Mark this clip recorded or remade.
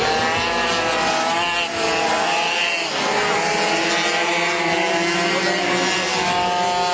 recorded